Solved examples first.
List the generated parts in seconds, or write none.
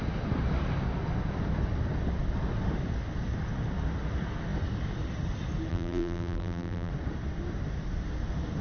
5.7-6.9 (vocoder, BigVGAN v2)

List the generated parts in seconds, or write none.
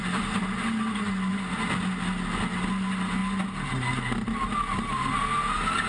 none